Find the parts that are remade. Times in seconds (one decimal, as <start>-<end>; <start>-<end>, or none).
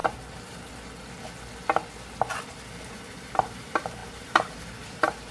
3.2-5.3